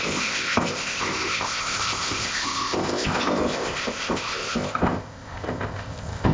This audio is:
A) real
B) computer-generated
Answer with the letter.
B